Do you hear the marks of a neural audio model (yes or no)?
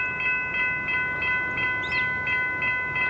no